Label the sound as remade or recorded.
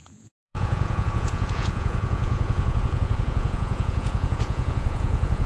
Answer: remade